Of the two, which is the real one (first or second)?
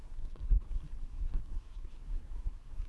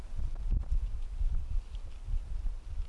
second